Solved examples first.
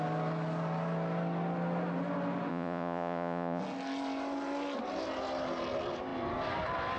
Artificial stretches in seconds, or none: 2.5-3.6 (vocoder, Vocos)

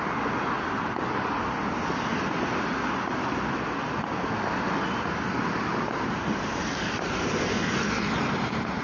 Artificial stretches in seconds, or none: none

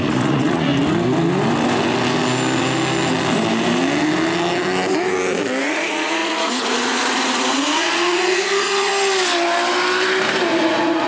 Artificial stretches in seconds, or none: 0.0-0.7 (vocoder, Vocos); 5.6-8.9; 10.6-11.1

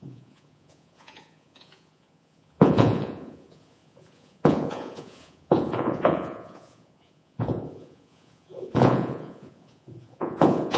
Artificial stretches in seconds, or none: 0.0-10.8 (vocoder, Vocos)

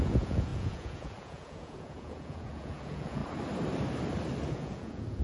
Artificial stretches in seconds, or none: 0.0-3.2 (vocoder, Vocos); 4.5-5.2

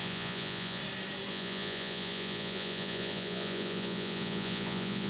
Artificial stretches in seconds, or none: 0.0-0.8 (vocoder, Vocos); 1.3-5.1

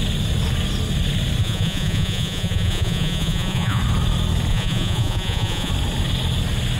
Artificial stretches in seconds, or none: 1.4-3.8 (vocoder, Vocos); 4.5-5.7